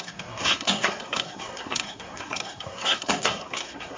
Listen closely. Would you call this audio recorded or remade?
remade